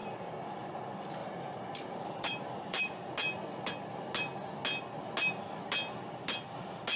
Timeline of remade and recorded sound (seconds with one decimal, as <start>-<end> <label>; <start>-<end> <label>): 0.0-1.2 recorded; 1.2-3.1 remade; 3.1-7.0 recorded